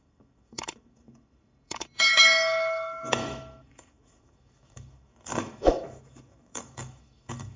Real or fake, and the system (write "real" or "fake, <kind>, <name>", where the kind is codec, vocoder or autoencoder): fake, autoencoder, DAC-VAE